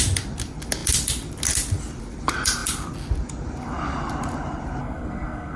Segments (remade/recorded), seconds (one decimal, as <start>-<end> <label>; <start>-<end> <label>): 0.0-4.8 recorded; 4.8-5.6 remade